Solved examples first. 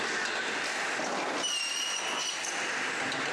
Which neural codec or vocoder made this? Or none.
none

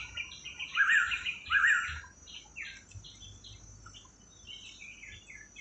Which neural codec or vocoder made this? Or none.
none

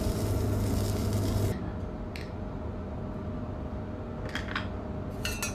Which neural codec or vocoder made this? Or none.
none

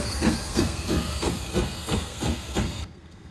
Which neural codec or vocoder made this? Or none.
codec, SNAC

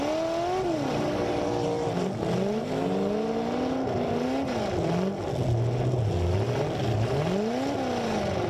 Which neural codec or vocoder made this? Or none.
none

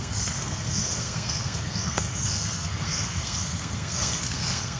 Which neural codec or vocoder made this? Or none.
codec, SNAC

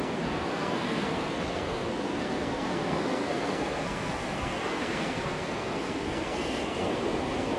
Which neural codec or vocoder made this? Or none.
codec, SNAC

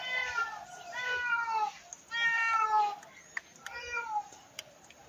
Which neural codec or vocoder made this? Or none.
none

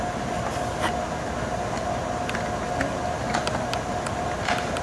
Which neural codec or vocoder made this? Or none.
none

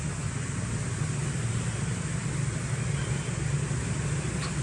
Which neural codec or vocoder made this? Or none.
none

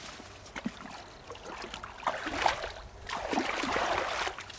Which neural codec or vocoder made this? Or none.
none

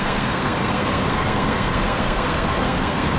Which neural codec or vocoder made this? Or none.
codec, SNAC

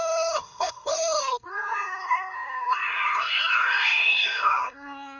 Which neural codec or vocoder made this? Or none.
codec, SNAC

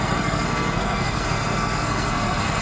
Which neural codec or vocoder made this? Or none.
codec, SNAC